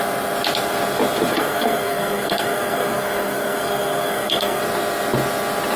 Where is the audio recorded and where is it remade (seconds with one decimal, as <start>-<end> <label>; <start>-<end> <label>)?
0.0-1.3 recorded; 1.3-4.6 remade; 4.6-5.8 recorded